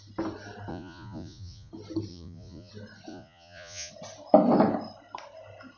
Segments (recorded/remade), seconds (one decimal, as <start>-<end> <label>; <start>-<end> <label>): 0.0-0.7 recorded; 0.7-1.7 remade; 1.7-2.1 recorded; 2.1-2.7 remade; 2.7-3.1 recorded; 3.1-3.9 remade; 3.9-5.8 recorded

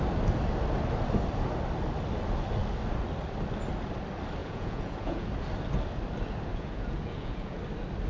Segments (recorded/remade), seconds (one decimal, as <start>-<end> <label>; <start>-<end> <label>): 0.0-4.4 recorded; 4.4-5.3 remade; 5.3-6.5 recorded; 6.5-7.6 remade; 7.6-8.1 recorded